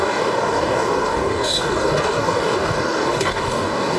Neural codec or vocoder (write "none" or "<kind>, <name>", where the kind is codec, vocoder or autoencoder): codec, DAC